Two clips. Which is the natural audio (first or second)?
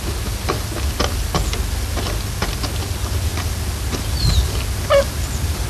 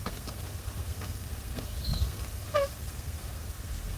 first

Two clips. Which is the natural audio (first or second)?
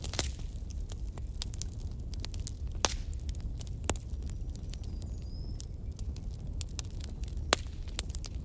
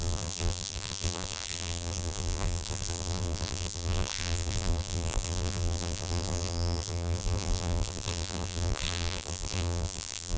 first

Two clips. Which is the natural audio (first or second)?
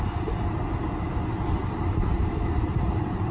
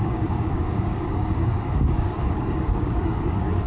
first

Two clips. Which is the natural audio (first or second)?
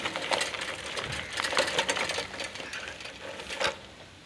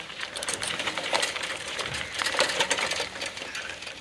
first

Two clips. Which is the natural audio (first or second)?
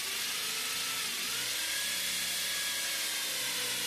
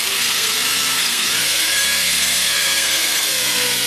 first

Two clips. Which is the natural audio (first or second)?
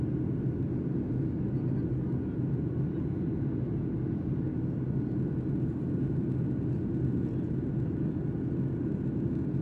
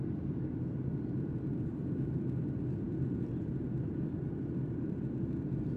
first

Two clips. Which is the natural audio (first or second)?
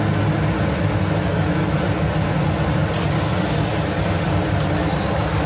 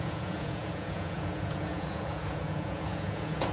first